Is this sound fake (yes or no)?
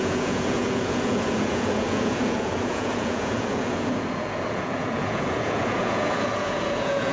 yes